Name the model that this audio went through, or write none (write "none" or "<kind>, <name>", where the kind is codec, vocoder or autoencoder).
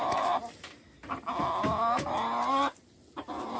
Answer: none